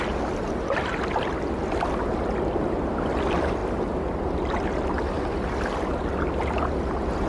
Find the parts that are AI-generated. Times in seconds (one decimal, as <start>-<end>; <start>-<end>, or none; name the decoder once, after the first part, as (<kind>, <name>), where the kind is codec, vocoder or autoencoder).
none

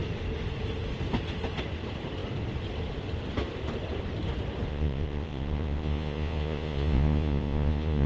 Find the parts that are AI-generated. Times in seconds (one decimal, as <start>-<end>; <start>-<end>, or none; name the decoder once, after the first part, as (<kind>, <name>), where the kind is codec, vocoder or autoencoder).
4.7-8.1 (vocoder, Vocos)

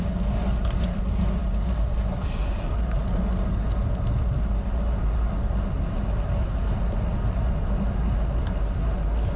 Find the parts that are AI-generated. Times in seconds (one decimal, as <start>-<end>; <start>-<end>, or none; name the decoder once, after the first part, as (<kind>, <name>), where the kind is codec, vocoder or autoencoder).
none

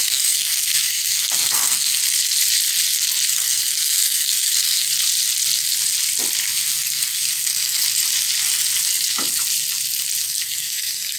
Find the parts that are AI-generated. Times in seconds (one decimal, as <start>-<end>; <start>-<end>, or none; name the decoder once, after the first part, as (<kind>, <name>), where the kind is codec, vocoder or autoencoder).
0.0-2.0 (codec, SNAC); 3.3-4.9; 6.5-7.8; 10.2-11.2